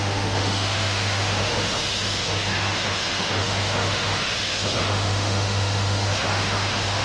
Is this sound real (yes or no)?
no